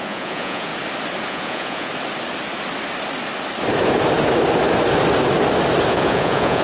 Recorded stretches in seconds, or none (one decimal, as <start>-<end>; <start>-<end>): 0.7-1.3; 1.9-5.9